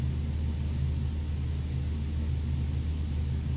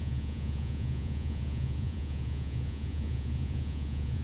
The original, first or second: first